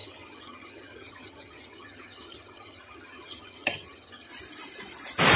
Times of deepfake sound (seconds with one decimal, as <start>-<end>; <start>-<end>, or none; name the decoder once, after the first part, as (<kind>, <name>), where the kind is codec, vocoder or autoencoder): 0.0-4.3 (vocoder, HiFi-GAN)